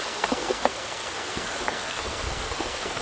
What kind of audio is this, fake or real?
fake